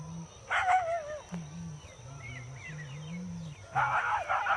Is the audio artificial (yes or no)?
no